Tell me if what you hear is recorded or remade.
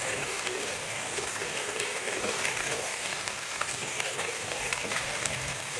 remade